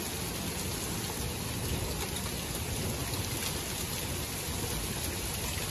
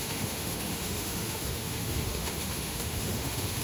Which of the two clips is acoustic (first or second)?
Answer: first